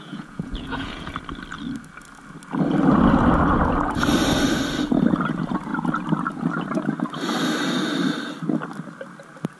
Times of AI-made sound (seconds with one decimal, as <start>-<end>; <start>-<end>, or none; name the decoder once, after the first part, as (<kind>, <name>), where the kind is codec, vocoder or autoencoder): 0.0-1.1 (vocoder, Vocos)